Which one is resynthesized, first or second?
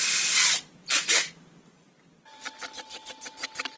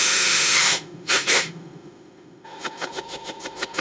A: second